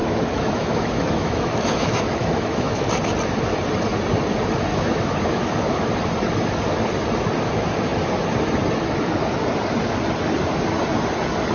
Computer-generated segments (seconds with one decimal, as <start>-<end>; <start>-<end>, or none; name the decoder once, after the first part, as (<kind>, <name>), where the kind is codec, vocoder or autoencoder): 0.0-2.9 (autoencoder, DAC-VAE); 4.7-5.9